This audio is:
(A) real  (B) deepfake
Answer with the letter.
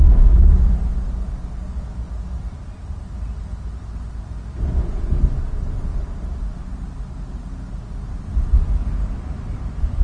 A